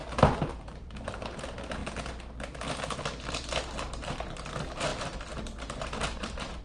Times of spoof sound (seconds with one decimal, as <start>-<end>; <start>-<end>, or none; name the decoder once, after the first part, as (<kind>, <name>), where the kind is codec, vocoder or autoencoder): 0.5-1.8 (vocoder, BigVGAN v2); 3.9-6.6